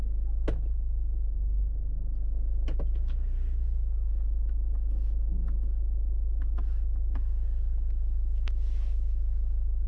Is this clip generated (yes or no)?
no